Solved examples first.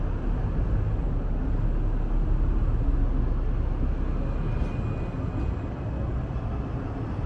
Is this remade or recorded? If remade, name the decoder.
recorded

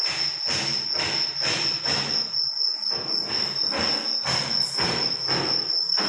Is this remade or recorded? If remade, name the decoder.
recorded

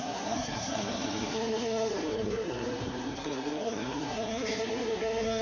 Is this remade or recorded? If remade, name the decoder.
remade, codec, SNAC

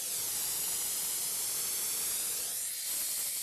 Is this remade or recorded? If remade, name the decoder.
recorded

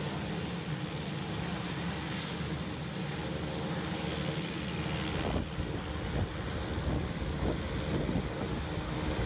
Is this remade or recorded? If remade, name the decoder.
recorded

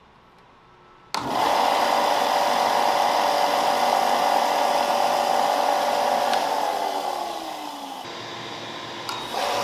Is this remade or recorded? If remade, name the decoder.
recorded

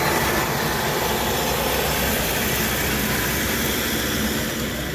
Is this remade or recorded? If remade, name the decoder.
recorded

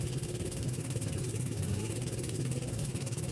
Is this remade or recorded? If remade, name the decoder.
remade, codec, SNAC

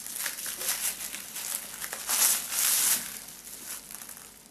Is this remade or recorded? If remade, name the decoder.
recorded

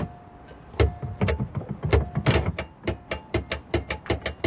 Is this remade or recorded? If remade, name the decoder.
recorded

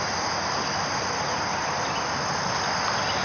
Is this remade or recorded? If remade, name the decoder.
recorded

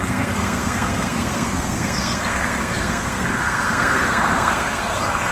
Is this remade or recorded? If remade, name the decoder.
remade, codec, SNAC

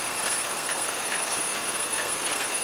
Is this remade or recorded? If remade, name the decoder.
remade, codec, SNAC